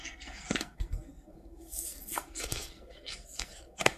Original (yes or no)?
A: no